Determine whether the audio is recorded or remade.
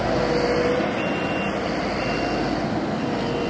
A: recorded